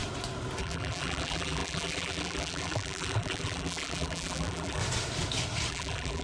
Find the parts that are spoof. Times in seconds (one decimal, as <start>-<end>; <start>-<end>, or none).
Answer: 0.6-4.8; 5.7-6.2